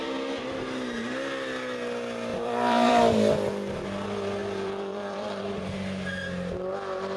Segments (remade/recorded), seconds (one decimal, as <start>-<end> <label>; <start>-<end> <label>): 0.0-2.3 recorded; 2.3-3.0 remade; 3.0-4.4 recorded; 4.4-5.4 remade; 5.4-7.2 recorded